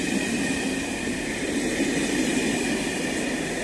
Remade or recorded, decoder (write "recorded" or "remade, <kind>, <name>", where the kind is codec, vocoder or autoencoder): recorded